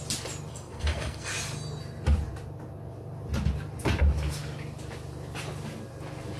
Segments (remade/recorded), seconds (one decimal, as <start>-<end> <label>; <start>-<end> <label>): 0.0-0.5 recorded; 0.5-1.3 remade; 1.3-6.4 recorded